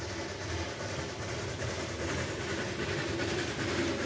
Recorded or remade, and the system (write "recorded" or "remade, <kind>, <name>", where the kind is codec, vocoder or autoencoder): recorded